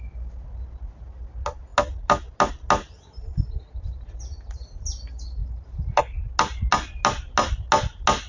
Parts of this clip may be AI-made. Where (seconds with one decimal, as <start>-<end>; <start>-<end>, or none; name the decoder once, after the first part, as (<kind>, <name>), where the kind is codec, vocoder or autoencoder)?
none